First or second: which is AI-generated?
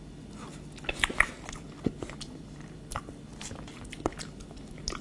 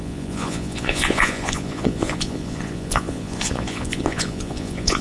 second